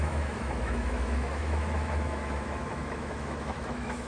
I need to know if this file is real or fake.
fake